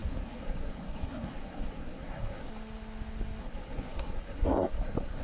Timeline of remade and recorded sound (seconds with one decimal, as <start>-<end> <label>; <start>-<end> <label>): 0.0-2.5 remade; 2.5-3.4 recorded; 3.4-5.2 remade